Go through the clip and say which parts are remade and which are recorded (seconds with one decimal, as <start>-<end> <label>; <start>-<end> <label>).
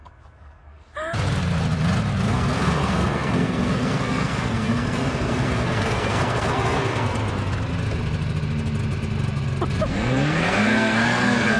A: 0.0-0.9 remade; 0.9-2.3 recorded; 2.3-7.2 remade; 7.2-9.9 recorded; 9.9-11.6 remade